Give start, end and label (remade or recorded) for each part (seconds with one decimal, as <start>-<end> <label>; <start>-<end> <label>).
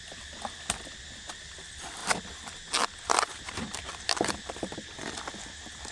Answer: 0.0-5.9 recorded